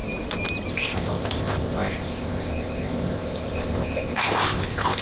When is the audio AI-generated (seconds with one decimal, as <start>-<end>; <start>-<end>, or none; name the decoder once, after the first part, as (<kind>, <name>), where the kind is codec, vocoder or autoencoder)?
0.7-5.0 (codec, ZipCodec)